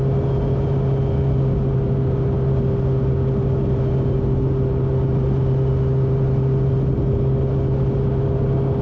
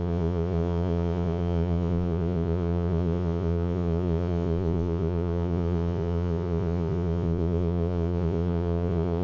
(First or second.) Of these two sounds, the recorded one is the first